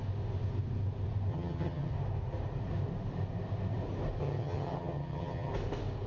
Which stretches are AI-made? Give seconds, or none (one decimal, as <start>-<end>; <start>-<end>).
1.3-1.9; 4.2-5.5